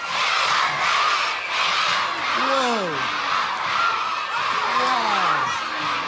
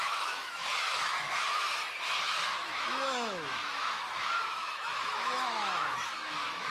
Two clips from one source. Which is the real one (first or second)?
first